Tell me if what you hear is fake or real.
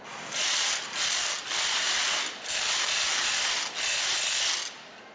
real